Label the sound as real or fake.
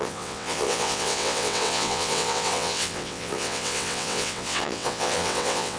fake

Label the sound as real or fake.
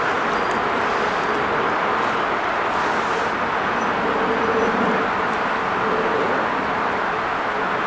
real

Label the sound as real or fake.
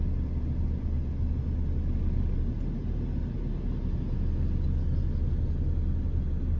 real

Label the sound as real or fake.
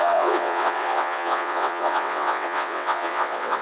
fake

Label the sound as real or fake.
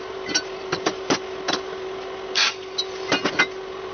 real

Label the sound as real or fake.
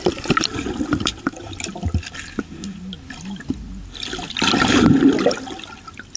real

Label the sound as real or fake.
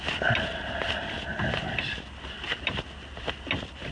real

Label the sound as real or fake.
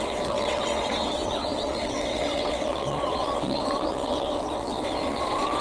fake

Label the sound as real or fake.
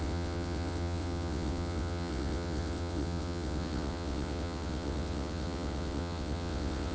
fake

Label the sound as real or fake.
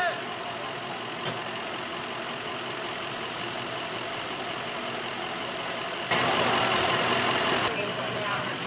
real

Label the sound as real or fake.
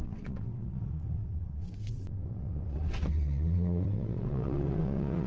fake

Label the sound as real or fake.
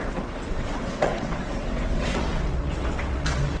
fake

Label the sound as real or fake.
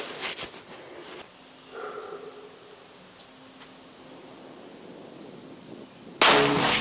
real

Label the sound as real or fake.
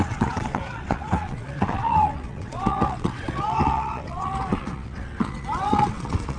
fake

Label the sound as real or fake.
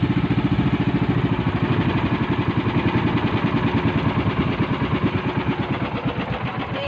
real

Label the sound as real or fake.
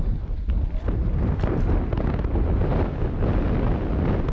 real